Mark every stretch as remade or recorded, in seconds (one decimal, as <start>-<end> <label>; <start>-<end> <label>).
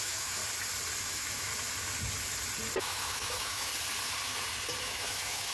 0.0-0.4 remade; 0.4-1.0 recorded; 1.0-1.5 remade; 1.5-2.8 recorded; 2.8-3.7 remade; 3.7-4.8 recorded; 4.8-5.5 remade